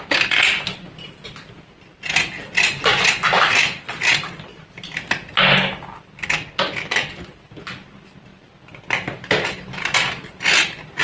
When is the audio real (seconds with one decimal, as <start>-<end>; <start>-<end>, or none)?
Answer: 0.0-11.0